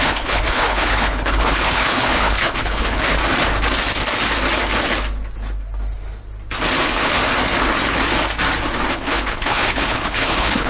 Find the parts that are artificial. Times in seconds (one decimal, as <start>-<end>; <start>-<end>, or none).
0.0-3.2; 6.8-7.2; 8.9-10.7